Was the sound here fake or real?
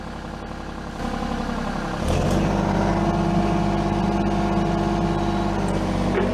real